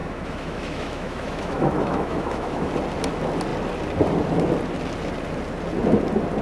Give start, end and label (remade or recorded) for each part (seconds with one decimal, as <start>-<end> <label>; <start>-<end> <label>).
0.0-2.7 remade; 2.7-6.4 recorded